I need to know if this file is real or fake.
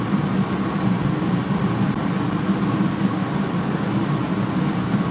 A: real